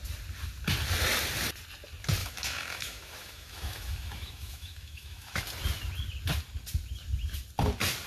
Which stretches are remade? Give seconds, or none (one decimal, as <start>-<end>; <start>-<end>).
2.2-5.4